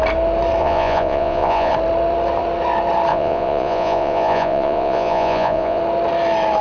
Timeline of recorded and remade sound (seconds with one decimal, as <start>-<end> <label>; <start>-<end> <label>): 0.0-0.6 recorded; 0.6-1.7 remade; 1.7-3.1 recorded; 3.1-5.8 remade; 5.8-6.6 recorded